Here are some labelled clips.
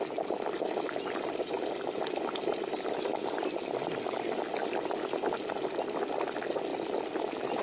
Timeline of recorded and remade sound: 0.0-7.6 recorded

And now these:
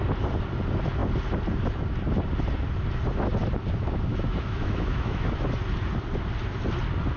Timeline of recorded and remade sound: 0.0-4.1 recorded; 4.1-5.5 remade; 5.5-7.2 recorded

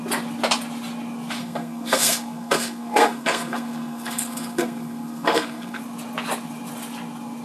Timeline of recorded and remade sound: 0.0-1.4 recorded; 1.4-5.8 remade; 5.8-7.4 recorded

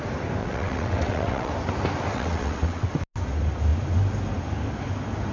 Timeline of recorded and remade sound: 0.0-0.4 recorded; 0.4-1.5 remade; 1.5-2.1 recorded; 2.1-2.9 remade; 2.9-5.3 recorded

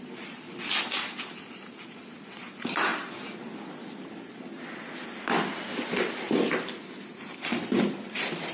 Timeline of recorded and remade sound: 0.0-8.5 recorded

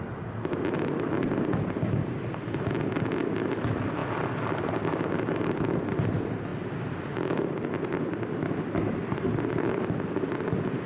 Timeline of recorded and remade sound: 0.0-10.9 recorded

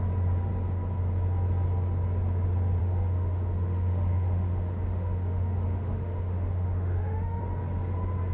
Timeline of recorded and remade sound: 0.0-2.8 recorded; 2.8-7.4 remade; 7.4-8.3 recorded

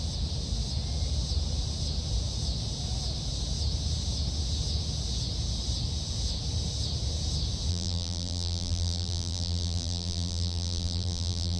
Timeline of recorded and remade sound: 0.0-7.7 recorded; 7.7-11.6 remade